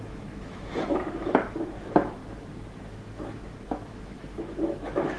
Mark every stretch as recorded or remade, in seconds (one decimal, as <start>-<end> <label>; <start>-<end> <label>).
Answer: 0.0-2.2 remade; 2.2-2.8 recorded; 2.8-5.2 remade